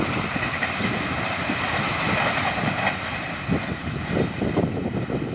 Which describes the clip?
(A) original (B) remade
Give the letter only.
B